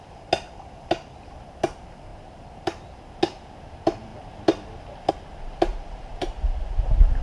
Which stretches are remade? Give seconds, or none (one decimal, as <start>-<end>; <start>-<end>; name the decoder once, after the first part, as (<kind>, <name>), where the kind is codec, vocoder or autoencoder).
2.1-3.0 (vocoder, BigVGAN v2); 5.7-7.2